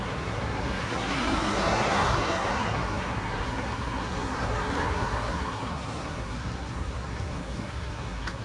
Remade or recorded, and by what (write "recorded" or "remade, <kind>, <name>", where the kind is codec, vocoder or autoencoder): remade, codec, SNAC